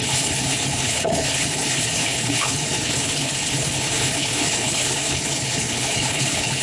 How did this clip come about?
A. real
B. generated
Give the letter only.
B